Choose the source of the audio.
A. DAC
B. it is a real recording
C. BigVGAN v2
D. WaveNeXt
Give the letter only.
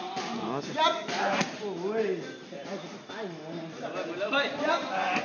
B